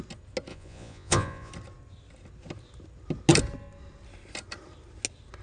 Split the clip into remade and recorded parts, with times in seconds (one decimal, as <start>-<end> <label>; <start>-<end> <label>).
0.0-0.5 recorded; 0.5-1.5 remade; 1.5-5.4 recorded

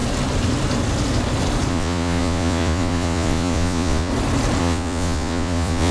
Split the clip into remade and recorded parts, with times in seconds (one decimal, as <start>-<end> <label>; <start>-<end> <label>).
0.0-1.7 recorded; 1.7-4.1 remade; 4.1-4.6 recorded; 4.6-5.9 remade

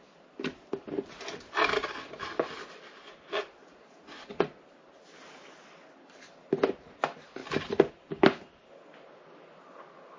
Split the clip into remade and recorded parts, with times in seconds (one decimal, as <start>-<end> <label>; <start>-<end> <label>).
0.0-3.6 recorded; 3.6-4.6 remade; 4.6-10.2 recorded

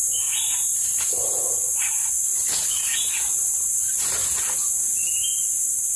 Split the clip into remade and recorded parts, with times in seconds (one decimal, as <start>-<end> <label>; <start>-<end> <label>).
0.0-6.0 recorded

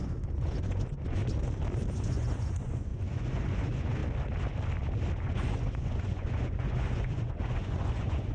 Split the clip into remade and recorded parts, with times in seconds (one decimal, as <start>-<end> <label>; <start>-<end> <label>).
0.0-1.2 remade; 1.2-1.9 recorded; 1.9-4.0 remade; 4.0-5.2 recorded; 5.2-8.3 remade

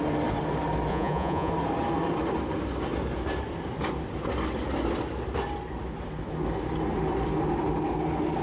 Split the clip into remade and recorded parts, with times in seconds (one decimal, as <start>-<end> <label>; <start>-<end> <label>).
0.0-0.9 recorded; 0.9-1.5 remade; 1.5-8.4 recorded

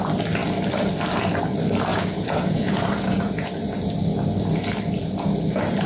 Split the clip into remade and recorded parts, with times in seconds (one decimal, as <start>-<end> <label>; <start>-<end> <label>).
0.0-1.9 recorded; 1.9-3.5 remade; 3.5-5.9 recorded